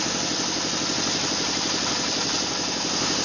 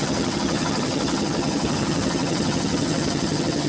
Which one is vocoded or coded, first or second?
second